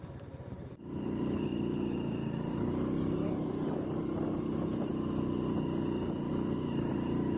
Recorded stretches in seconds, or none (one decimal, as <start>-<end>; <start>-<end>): 1.5-2.1; 4.9-6.3